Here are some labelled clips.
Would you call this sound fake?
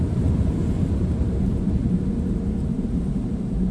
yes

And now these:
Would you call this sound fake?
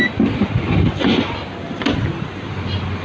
no